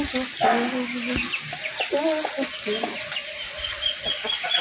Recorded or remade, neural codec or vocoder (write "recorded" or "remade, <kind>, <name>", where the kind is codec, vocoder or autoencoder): recorded